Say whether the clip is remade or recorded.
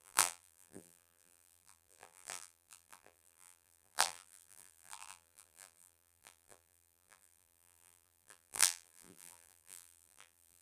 remade